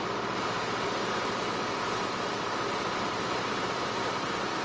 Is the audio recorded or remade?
remade